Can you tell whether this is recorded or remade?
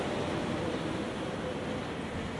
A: recorded